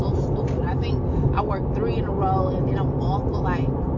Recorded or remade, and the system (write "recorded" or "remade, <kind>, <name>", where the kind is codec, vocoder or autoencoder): recorded